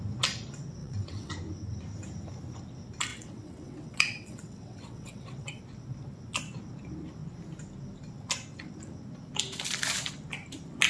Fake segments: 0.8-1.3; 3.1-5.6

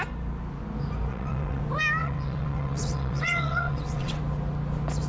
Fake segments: 1.1-1.6; 2.0-4.2

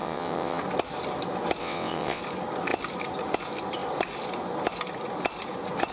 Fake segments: 0.0-0.6; 1.6-2.2